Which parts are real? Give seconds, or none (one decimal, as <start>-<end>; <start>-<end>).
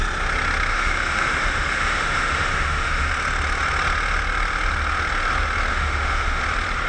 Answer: 0.0-0.7; 3.1-5.7; 6.4-6.9